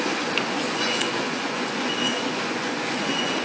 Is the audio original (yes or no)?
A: no